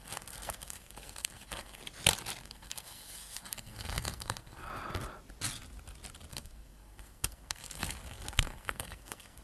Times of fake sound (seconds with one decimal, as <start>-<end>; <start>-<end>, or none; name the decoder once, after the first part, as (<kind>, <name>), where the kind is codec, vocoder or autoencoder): 0.0-1.8 (codec, SNAC); 2.4-4.7; 6.3-9.4